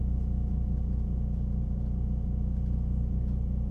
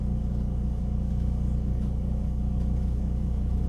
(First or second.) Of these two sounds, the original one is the first